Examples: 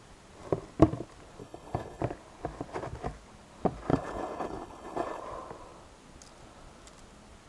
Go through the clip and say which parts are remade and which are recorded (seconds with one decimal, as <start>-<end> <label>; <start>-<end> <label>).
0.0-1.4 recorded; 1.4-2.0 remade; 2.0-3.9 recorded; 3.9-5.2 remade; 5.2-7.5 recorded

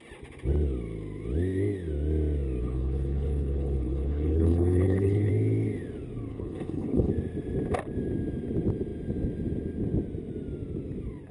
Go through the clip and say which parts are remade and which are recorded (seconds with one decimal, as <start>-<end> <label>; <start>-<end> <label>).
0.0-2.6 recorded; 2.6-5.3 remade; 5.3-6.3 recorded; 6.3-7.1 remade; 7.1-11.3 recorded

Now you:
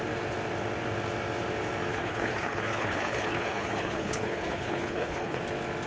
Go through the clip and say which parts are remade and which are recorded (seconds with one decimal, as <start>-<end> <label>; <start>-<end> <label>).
0.0-1.9 recorded; 1.9-5.4 remade; 5.4-5.9 recorded

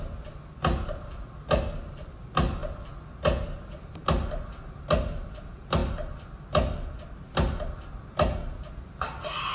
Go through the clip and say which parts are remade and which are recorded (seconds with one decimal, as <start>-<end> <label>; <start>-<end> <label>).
0.0-9.5 recorded